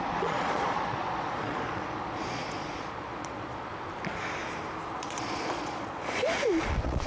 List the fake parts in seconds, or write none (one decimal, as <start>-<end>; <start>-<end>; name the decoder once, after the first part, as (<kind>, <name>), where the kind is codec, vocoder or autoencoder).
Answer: 0.0-3.7 (vocoder, Vocos); 4.9-7.1